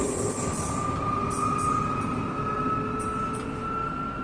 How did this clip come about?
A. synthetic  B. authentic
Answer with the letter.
B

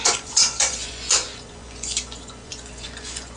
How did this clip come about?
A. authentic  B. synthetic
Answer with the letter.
B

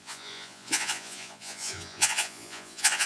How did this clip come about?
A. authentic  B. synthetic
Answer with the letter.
B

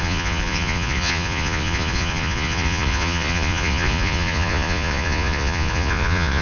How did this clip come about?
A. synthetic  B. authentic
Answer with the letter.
A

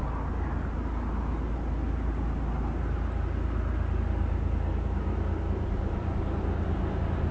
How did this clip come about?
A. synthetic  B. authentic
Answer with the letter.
B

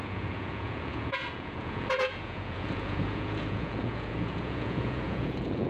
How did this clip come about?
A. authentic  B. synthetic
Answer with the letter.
B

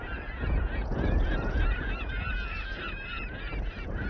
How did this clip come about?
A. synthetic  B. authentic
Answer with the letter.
A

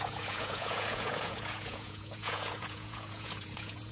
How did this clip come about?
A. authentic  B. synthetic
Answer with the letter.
B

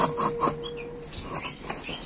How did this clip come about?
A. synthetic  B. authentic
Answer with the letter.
B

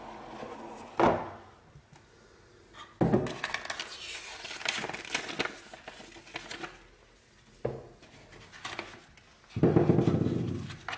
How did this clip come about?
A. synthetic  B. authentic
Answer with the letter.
B